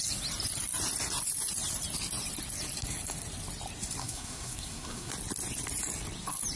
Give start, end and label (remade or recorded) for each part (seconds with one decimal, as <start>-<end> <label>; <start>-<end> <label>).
0.0-4.0 recorded; 4.0-5.1 remade; 5.1-6.6 recorded